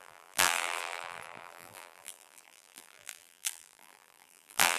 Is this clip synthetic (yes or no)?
yes